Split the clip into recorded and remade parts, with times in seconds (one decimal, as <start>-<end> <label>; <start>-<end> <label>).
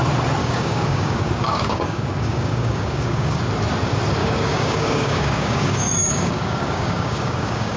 0.0-0.4 recorded; 0.4-3.4 remade; 3.4-4.2 recorded; 4.2-7.8 remade